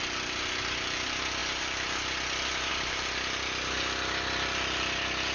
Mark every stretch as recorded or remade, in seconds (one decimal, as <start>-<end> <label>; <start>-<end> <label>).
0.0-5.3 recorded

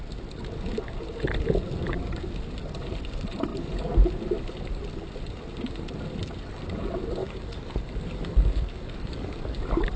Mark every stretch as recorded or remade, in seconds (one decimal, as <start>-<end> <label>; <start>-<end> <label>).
0.0-7.2 recorded; 7.2-9.6 remade; 9.6-10.0 recorded

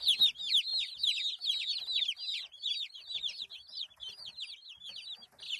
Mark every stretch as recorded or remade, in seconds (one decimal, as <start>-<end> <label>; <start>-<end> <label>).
0.0-5.6 recorded

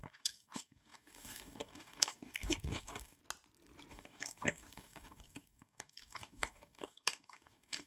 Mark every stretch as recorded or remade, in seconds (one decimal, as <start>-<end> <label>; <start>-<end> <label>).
0.0-3.2 remade; 3.2-3.9 recorded; 3.9-7.9 remade

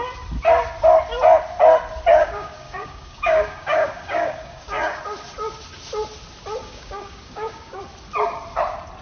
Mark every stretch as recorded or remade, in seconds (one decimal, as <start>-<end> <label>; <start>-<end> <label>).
0.0-2.2 recorded; 2.2-5.0 remade; 5.0-6.6 recorded; 6.6-7.8 remade; 7.8-9.0 recorded

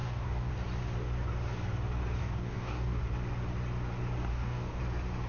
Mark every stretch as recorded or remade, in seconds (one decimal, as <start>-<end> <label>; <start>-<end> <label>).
0.0-0.5 remade; 0.5-2.2 recorded; 2.2-3.0 remade; 3.0-4.3 recorded; 4.3-4.8 remade; 4.8-5.3 recorded